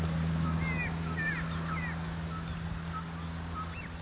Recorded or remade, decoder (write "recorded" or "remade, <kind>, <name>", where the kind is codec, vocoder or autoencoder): recorded